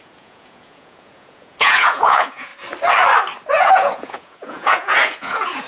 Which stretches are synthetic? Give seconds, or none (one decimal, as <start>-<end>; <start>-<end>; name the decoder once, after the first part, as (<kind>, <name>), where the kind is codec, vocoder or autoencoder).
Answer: 0.0-2.5 (vocoder, Vocos); 3.5-5.7

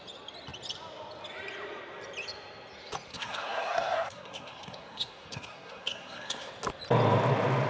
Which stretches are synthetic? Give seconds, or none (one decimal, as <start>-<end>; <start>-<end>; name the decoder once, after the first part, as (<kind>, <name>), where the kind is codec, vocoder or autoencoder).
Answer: 3.1-6.5 (codec, SNAC)

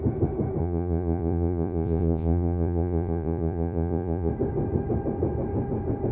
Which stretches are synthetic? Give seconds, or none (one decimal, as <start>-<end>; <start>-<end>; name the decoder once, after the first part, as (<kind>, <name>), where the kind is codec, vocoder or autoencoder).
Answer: 0.6-4.3 (vocoder, Vocos)

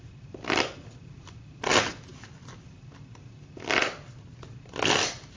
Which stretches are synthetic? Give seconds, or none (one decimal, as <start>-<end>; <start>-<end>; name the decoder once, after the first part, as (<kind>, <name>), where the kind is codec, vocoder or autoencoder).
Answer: none

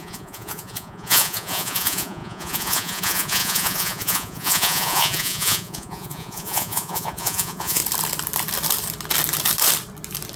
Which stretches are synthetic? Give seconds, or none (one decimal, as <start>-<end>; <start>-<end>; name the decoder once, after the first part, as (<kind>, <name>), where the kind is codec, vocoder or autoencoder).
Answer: 0.0-7.8 (vocoder, Vocos)